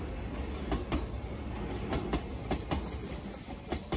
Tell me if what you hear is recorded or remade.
recorded